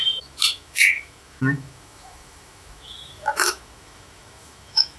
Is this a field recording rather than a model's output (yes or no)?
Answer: no